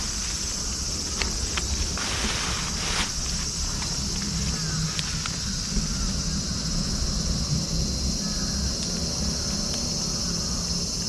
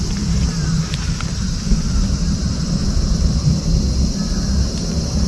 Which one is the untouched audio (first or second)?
first